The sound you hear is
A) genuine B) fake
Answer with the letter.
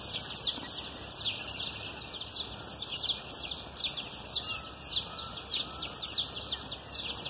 A